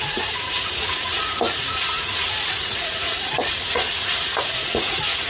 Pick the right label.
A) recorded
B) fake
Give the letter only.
B